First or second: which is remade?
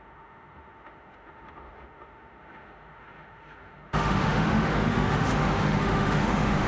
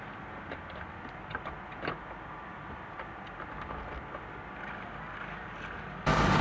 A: first